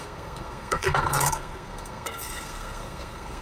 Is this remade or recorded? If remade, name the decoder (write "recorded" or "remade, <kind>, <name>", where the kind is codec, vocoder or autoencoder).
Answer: remade, codec, SNAC